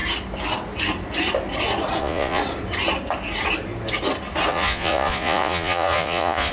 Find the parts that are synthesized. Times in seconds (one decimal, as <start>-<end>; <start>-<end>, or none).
2.0-2.4; 4.5-6.5